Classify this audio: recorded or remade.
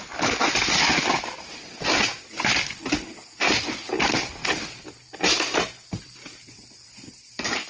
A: recorded